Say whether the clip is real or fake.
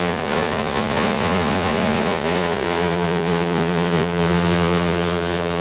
fake